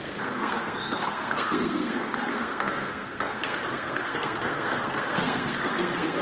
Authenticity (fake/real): fake